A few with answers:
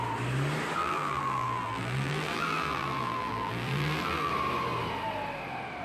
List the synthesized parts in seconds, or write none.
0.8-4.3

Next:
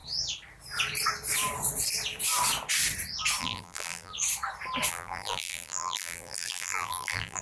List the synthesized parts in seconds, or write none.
3.4-4.1; 4.9-7.4

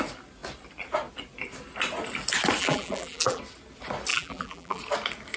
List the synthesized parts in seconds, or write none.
2.6-3.4; 4.1-4.8

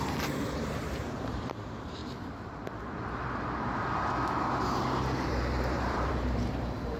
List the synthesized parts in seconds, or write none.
0.0-2.0; 5.3-7.0

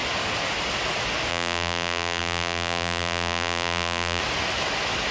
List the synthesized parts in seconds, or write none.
1.3-4.2

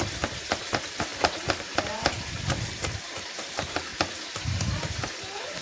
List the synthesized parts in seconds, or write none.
0.0-3.9

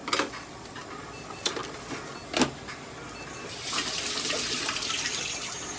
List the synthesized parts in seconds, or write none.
0.6-1.6; 5.1-5.8